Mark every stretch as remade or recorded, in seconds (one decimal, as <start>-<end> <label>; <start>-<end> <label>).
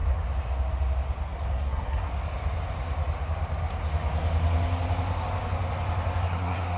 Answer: 0.0-1.5 recorded; 1.5-2.1 remade; 2.1-6.2 recorded; 6.2-6.8 remade